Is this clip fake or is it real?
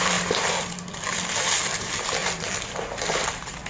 fake